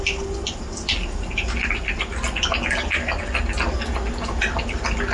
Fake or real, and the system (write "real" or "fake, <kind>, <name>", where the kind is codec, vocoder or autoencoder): real